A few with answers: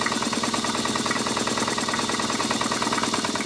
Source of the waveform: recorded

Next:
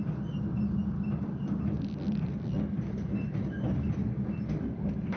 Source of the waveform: recorded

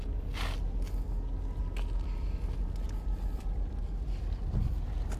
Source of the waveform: recorded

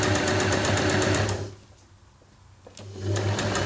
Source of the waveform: recorded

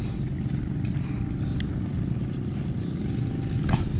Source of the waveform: recorded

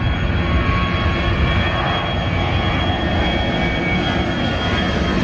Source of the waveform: recorded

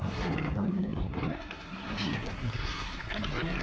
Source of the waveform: remade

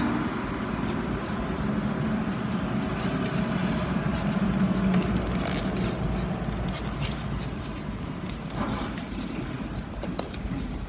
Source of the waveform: recorded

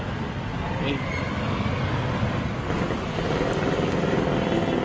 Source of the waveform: recorded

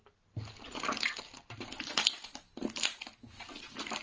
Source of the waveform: recorded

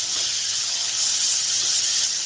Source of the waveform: remade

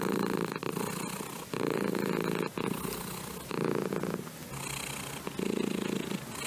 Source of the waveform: recorded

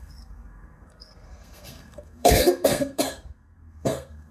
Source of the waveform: remade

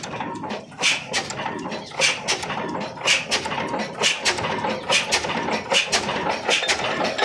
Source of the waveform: remade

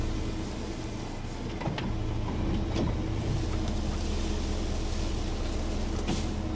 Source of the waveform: recorded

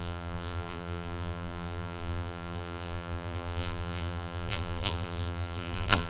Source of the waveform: remade